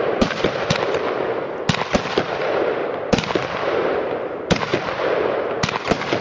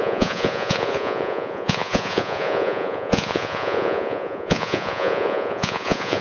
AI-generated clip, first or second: second